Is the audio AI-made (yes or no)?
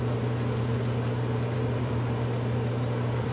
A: yes